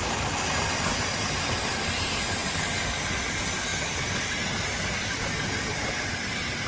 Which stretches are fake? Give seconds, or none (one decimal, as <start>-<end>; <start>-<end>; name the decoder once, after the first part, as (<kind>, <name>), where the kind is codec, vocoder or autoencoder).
none